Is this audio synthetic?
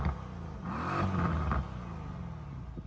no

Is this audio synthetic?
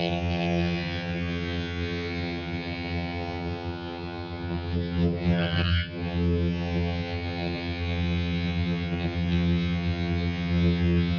yes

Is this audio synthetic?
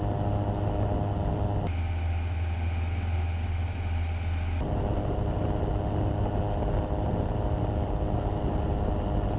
no